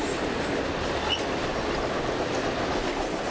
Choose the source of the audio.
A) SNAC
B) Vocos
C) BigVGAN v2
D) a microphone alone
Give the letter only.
D